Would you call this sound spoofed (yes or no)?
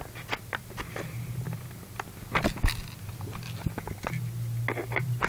no